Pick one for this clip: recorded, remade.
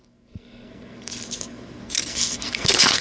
remade